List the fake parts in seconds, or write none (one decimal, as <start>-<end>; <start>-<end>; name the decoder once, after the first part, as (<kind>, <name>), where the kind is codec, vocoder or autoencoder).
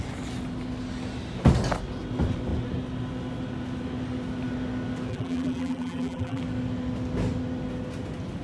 5.1-6.4 (vocoder, BigVGAN v2)